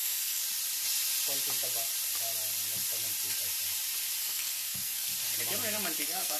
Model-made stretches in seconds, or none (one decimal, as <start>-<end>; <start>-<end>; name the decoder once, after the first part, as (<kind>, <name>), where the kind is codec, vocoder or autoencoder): 0.0-0.4 (codec, SNAC); 4.2-5.1; 6.0-6.4